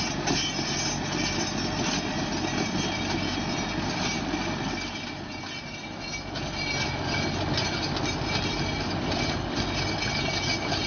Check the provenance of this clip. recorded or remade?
recorded